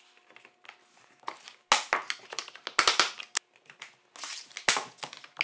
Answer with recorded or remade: recorded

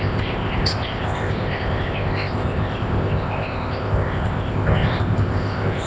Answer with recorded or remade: remade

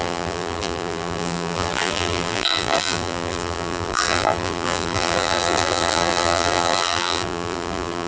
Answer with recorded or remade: remade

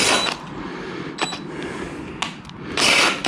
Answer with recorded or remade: recorded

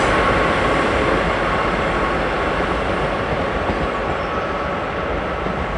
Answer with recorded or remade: recorded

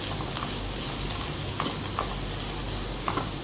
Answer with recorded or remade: recorded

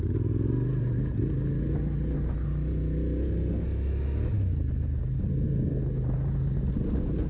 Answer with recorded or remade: recorded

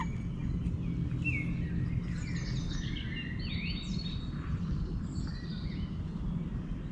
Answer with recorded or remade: recorded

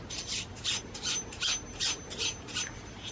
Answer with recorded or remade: recorded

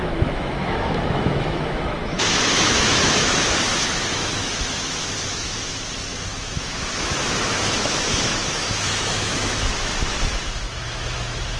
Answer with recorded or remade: remade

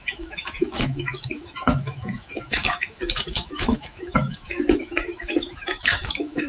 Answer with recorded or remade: remade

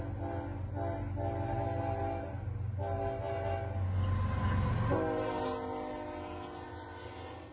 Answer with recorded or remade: recorded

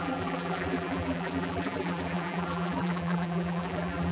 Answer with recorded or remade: remade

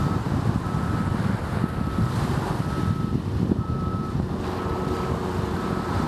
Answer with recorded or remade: recorded